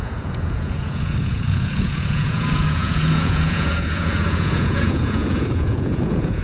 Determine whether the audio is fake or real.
fake